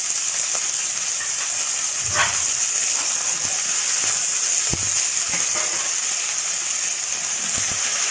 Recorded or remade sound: recorded